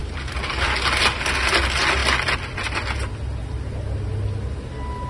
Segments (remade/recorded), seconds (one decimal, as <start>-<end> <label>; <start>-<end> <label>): 0.0-5.1 recorded